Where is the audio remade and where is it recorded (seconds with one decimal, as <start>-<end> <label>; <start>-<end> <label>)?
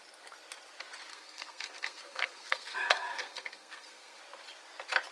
0.0-1.1 recorded; 1.1-4.2 remade; 4.2-5.1 recorded